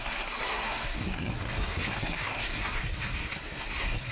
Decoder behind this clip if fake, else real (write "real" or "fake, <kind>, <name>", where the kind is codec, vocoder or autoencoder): fake, codec, SNAC